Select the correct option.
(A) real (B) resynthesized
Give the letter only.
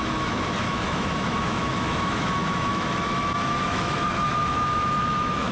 B